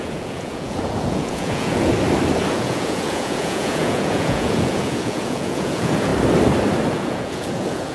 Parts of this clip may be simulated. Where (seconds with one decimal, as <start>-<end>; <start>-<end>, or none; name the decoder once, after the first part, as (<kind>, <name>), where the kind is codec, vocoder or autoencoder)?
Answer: 0.0-1.9 (vocoder, Vocos); 2.5-6.1; 6.9-7.9